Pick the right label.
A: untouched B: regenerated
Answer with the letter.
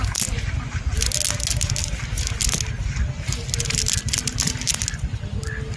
A